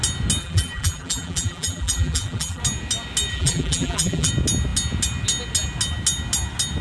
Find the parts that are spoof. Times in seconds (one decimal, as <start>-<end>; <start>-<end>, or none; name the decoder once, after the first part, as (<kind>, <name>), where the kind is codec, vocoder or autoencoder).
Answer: 0.4-2.6 (vocoder, BigVGAN v2); 3.3-4.3